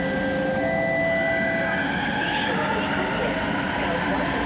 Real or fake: real